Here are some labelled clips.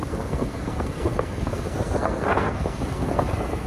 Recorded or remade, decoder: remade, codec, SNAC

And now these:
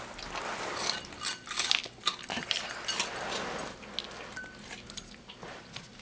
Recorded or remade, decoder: recorded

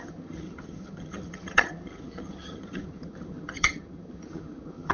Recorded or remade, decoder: remade, vocoder, HiFi-GAN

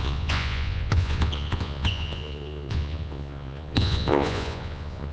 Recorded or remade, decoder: remade, vocoder, Vocos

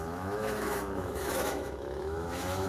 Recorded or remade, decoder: remade, autoencoder, DAC-VAE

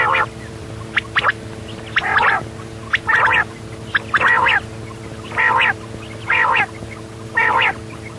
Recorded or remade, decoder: recorded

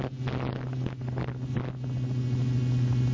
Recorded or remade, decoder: recorded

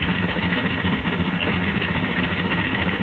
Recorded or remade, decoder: remade, autoencoder, DAC-VAE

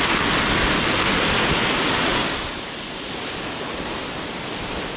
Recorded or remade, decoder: recorded